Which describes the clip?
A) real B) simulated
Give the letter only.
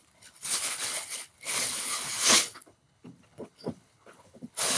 B